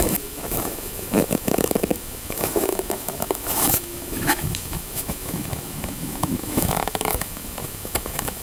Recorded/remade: remade